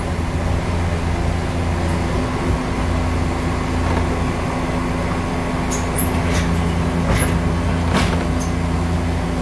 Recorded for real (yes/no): yes